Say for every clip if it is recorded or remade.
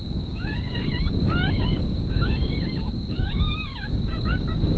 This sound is remade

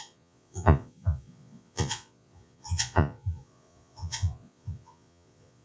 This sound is remade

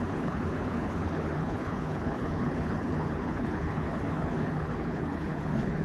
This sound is remade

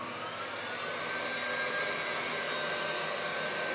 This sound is recorded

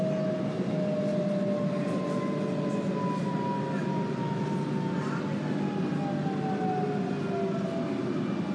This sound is recorded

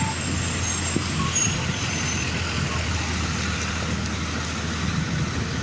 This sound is recorded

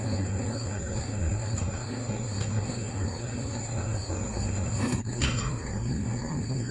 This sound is remade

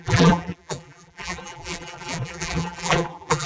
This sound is remade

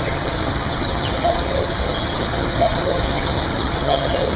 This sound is remade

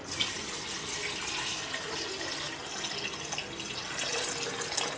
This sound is recorded